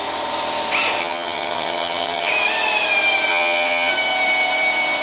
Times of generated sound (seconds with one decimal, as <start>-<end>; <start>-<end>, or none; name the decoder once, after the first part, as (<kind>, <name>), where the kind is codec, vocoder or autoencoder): 1.0-2.3 (vocoder, HiFi-GAN); 3.3-3.9